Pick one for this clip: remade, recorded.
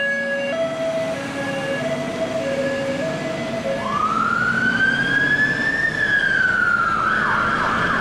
recorded